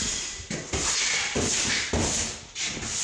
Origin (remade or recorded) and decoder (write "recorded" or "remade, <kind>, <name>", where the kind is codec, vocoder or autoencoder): recorded